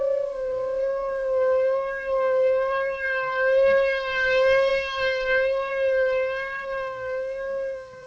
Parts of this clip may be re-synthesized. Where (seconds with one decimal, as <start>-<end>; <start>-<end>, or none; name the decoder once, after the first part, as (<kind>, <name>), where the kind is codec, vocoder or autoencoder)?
0.0-8.1 (codec, SNAC)